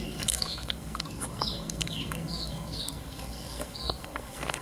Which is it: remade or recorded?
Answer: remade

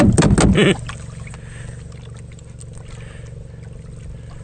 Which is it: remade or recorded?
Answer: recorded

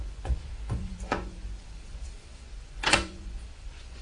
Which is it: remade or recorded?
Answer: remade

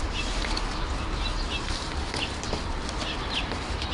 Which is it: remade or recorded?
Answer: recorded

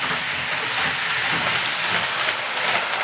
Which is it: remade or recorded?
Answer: recorded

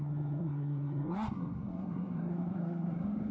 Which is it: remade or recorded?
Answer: remade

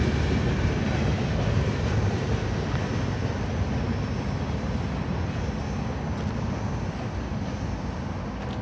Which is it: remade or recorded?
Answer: recorded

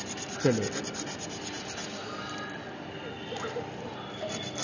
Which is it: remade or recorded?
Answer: recorded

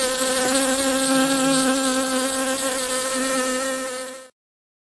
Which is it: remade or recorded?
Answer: recorded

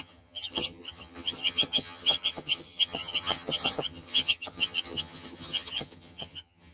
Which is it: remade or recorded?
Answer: remade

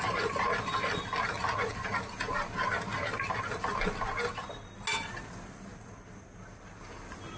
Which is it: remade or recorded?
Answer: recorded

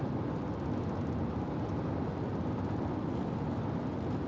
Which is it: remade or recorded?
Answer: recorded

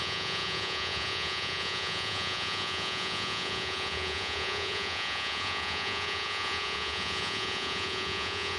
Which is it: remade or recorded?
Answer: remade